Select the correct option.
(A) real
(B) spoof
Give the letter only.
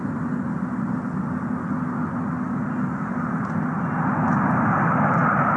A